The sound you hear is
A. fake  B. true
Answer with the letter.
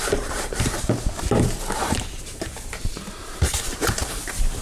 A